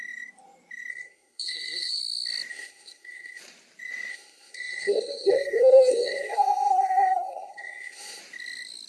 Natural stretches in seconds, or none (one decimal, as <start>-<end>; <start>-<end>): 0.0-0.9; 2.0-2.5; 3.4-4.1; 8.2-8.9